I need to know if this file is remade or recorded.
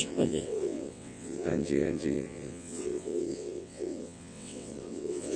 remade